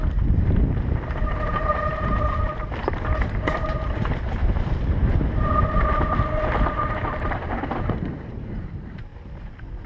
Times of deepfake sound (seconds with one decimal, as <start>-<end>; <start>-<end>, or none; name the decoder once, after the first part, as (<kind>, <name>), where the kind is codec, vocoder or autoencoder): 0.0-4.4 (vocoder, BigVGAN v2); 7.6-9.1